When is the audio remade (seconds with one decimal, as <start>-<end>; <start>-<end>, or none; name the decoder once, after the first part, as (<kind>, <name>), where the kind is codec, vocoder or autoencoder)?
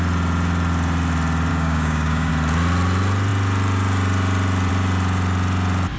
1.5-2.3 (codec, DAC)